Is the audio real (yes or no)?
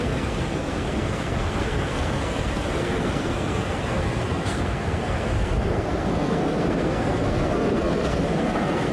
no